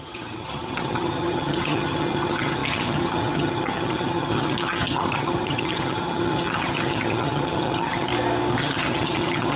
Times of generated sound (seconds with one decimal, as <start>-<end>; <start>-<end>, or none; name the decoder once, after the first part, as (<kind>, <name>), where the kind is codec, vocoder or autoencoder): 0.0-8.1 (vocoder, HiFi-GAN); 8.6-9.6